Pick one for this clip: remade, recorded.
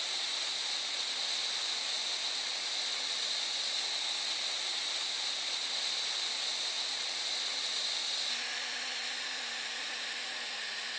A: recorded